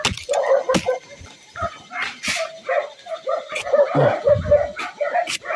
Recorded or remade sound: recorded